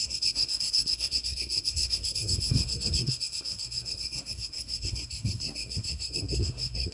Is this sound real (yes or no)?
no